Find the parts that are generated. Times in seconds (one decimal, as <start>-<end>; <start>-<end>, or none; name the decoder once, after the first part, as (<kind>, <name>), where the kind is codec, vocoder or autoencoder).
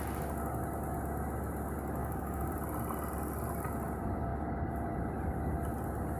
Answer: 2.0-2.5 (codec, DAC)